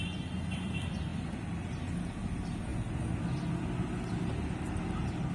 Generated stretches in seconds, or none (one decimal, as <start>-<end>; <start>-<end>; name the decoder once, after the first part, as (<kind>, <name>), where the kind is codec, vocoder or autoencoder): none